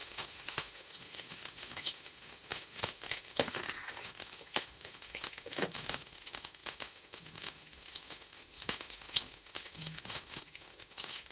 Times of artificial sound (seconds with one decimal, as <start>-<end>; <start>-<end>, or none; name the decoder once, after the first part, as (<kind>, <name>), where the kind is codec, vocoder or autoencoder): 0.0-11.3 (autoencoder, DAC-VAE)